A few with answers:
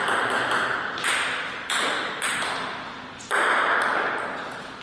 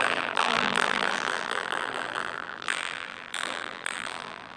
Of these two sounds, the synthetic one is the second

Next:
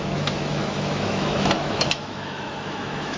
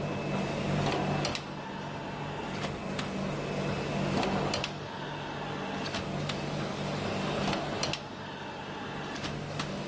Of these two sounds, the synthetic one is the first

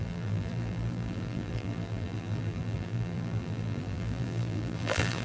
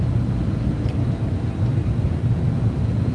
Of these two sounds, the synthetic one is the first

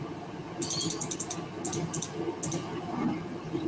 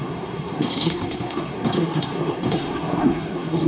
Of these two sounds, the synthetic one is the second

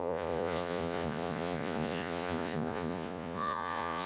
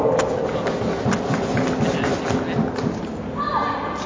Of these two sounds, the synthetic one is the first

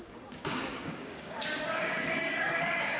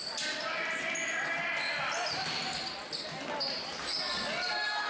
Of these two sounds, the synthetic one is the first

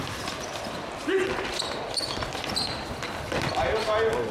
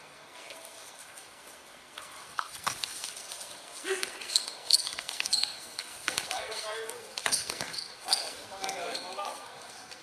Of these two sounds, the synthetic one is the second